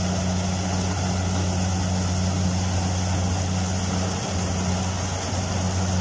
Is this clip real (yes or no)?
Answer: yes